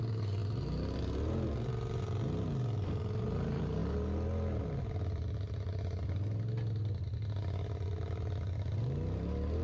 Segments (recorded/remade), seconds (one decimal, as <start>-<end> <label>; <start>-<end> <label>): 0.0-9.6 recorded